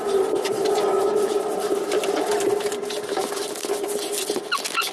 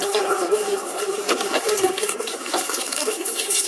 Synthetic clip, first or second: second